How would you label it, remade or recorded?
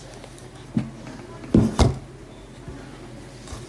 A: recorded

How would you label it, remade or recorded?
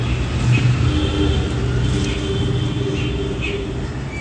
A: recorded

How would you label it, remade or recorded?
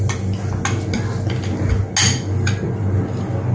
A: recorded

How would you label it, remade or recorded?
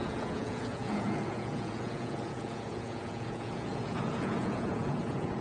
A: remade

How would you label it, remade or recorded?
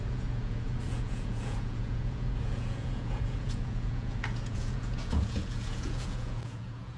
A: remade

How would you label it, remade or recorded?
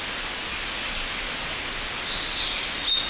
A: recorded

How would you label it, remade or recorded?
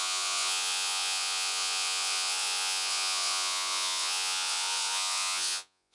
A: remade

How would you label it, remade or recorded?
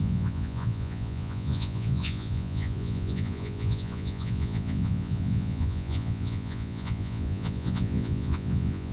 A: remade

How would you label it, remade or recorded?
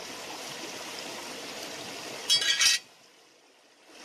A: recorded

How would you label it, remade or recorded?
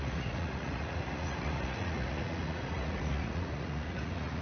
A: remade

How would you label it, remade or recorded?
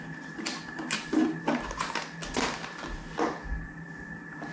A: recorded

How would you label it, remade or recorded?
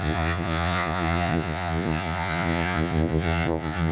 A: remade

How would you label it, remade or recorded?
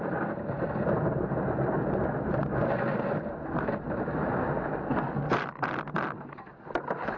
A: recorded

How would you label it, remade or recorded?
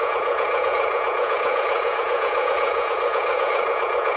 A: remade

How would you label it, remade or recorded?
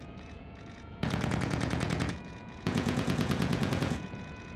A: remade